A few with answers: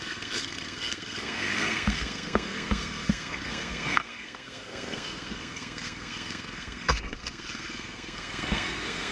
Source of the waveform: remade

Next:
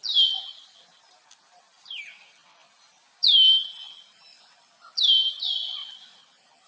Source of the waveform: recorded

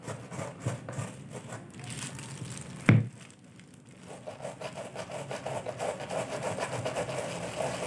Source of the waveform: recorded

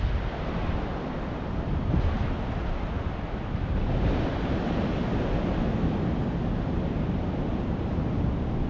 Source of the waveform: recorded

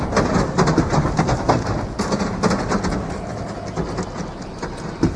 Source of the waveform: recorded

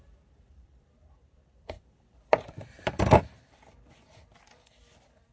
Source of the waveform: remade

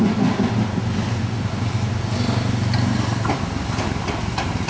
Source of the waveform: recorded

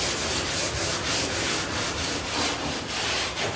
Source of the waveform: recorded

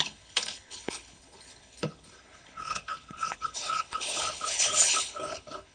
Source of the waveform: remade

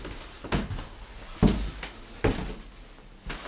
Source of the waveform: recorded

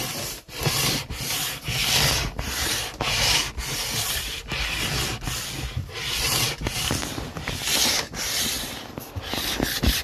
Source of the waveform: recorded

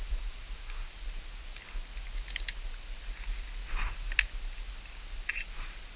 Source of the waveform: recorded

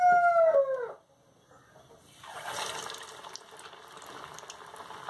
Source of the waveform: recorded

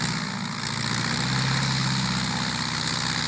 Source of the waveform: recorded